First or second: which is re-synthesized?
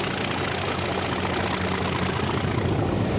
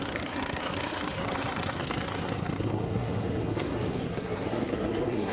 second